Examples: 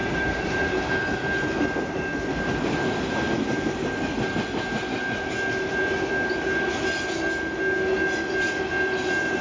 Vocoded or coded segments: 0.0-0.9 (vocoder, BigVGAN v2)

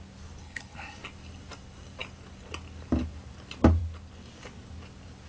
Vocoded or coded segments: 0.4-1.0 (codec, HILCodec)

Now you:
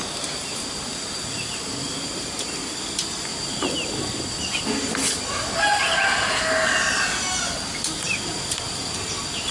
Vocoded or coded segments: none